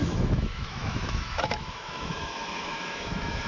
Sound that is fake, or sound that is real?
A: fake